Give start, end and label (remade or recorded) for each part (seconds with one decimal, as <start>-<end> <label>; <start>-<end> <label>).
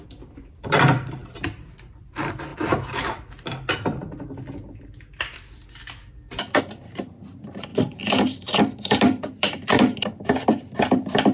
0.0-1.2 remade; 1.2-1.9 recorded; 1.9-2.5 remade; 2.5-6.6 recorded; 6.6-11.3 remade